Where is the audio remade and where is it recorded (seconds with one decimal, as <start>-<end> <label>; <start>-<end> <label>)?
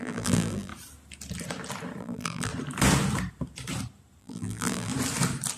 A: 0.0-0.7 remade; 0.7-2.0 recorded; 2.0-2.5 remade; 2.5-4.2 recorded; 4.2-4.9 remade; 4.9-5.6 recorded